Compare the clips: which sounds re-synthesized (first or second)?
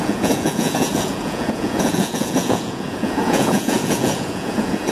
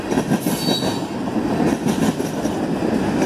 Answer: first